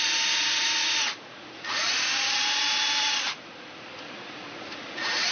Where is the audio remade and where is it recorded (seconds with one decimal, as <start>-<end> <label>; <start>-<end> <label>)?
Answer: 0.0-5.3 remade